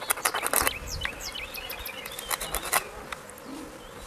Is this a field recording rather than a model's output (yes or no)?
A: yes